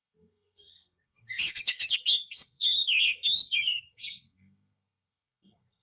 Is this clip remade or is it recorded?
remade